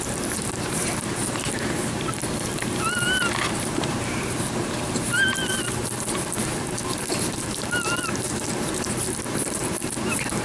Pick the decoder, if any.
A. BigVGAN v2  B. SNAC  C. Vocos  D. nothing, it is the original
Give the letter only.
A